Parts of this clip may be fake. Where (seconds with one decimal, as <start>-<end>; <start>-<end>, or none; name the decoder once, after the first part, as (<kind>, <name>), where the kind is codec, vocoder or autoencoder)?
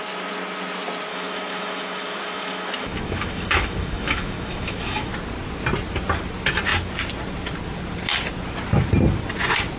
1.1-5.1 (autoencoder, DAC-VAE)